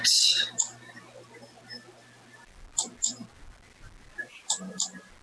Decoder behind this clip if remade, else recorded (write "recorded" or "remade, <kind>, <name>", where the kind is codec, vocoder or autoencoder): recorded